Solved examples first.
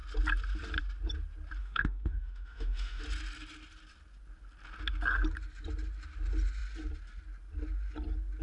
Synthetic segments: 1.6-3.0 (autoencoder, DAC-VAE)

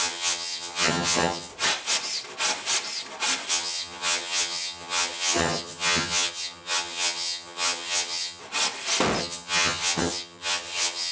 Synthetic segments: 0.0-1.5 (vocoder, HiFi-GAN); 3.5-8.4; 9.2-11.1